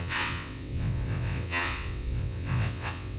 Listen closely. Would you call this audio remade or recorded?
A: remade